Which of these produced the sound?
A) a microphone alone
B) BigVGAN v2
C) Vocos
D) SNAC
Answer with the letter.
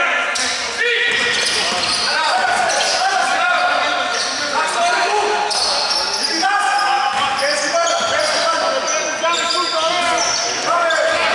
A